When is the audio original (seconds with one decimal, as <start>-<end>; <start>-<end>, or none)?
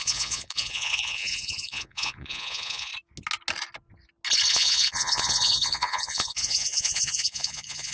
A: 2.9-4.5